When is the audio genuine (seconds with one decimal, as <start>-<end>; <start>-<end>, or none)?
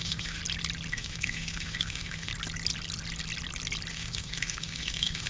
0.4-0.9; 2.3-3.9